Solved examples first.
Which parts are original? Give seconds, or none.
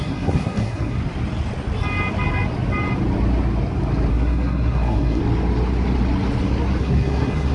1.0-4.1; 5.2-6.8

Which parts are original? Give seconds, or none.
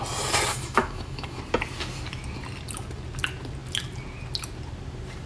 0.0-0.5; 1.4-5.3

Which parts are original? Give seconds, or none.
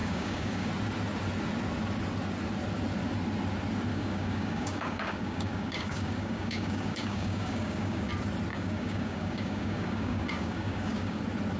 0.7-3.9; 8.1-8.5; 11.2-11.6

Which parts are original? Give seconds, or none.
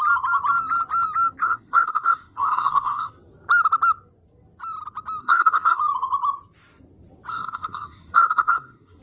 0.0-1.4; 3.1-5.2; 5.8-7.3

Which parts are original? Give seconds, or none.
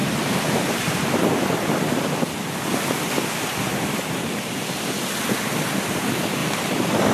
1.9-6.4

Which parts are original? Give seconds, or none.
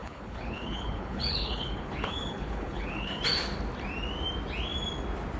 3.2-5.4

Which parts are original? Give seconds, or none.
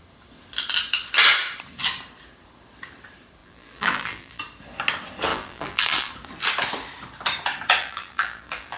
0.0-3.4; 4.4-5.3; 6.1-7.8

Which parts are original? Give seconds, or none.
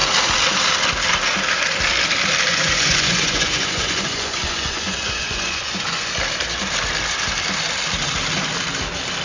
0.0-2.5; 6.1-9.2